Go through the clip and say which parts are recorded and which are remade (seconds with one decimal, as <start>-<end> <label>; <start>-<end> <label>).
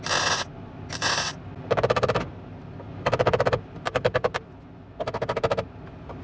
0.0-6.2 recorded